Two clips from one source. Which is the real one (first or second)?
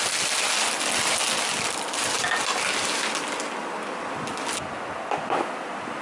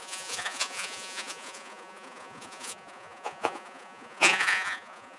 first